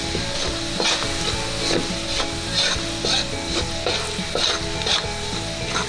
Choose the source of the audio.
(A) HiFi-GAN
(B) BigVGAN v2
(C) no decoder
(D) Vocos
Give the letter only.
C